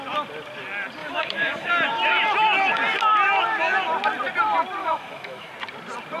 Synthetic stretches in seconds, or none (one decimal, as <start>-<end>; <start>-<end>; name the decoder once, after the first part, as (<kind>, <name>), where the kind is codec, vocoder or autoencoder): 1.0-1.7 (autoencoder, DAC-VAE); 4.8-5.5